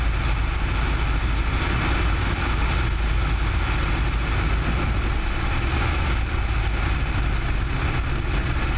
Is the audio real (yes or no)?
yes